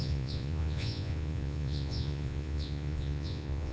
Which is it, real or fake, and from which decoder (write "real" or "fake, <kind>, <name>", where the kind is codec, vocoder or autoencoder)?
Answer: fake, vocoder, Vocos